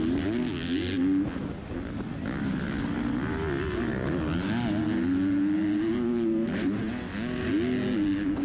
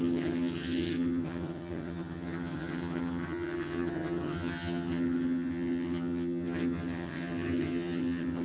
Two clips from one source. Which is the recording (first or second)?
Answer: first